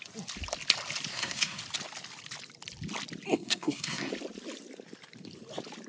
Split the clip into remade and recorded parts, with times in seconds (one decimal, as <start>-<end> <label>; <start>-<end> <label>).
0.0-1.1 recorded; 1.1-1.6 remade; 1.6-3.3 recorded; 3.3-4.1 remade; 4.1-5.9 recorded